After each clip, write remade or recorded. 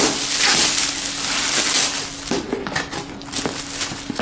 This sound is recorded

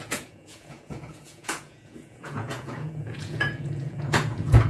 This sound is remade